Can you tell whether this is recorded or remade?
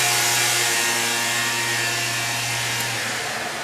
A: recorded